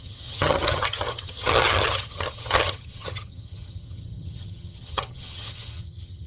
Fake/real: fake